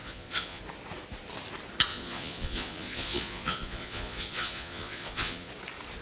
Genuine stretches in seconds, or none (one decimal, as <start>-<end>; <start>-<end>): 0.6-1.9; 5.5-6.0